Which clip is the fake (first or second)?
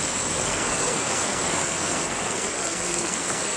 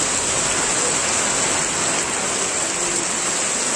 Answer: first